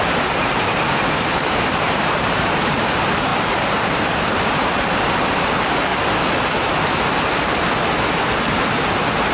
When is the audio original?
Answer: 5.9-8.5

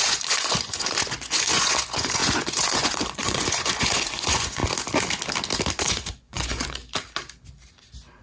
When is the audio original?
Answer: 4.6-5.8; 6.8-8.2